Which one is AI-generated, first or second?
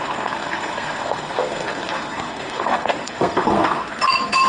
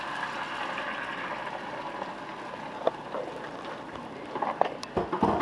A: first